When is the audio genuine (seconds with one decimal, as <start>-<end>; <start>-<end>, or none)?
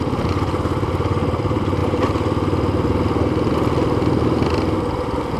0.0-5.4